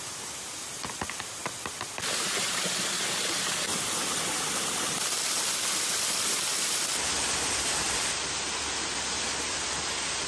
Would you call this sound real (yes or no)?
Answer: yes